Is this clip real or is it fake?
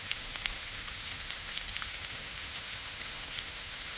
fake